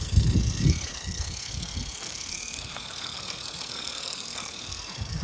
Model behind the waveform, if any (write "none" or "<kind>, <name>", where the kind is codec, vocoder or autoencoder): codec, SNAC